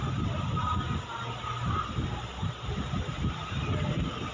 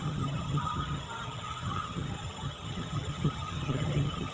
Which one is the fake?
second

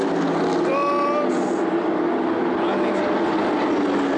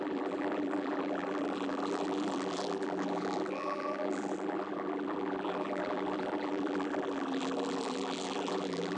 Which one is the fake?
second